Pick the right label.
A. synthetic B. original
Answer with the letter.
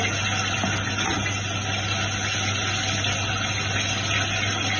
B